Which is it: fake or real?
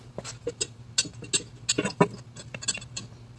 real